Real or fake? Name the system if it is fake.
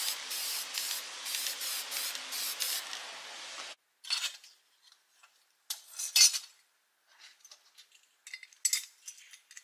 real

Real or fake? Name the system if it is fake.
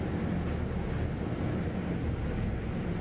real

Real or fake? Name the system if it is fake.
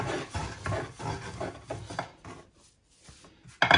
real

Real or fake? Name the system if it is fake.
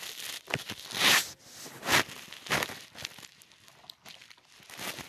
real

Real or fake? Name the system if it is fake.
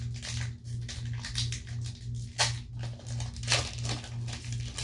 real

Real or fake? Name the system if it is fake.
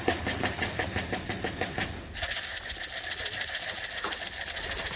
real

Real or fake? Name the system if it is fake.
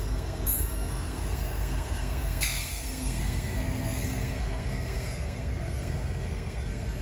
fake, codec, SNAC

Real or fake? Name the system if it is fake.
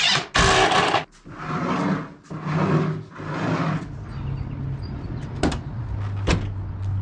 real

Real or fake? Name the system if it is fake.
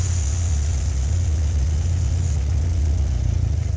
fake, vocoder, Vocos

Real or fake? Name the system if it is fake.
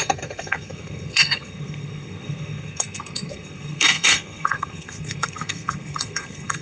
fake, codec, SNAC